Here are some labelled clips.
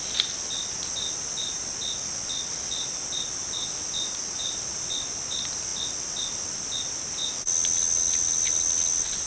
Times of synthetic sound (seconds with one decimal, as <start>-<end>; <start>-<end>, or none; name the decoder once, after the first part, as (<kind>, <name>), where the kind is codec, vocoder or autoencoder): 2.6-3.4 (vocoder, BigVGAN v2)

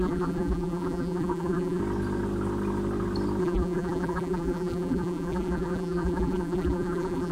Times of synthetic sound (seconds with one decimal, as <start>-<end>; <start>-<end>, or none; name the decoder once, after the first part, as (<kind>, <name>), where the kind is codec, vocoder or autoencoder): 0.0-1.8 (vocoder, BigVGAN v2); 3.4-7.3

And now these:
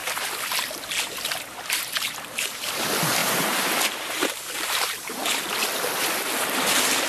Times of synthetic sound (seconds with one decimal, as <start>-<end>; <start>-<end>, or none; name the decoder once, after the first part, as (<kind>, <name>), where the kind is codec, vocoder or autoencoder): 1.8-5.2 (vocoder, BigVGAN v2); 6.6-7.1

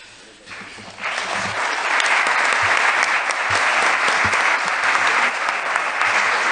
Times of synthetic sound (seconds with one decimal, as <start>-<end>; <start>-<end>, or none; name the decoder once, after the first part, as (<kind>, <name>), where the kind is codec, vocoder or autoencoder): 0.7-1.3 (vocoder, BigVGAN v2); 3.7-6.0